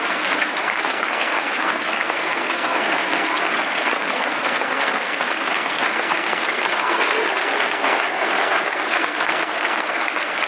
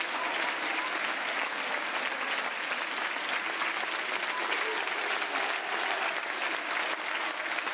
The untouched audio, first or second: second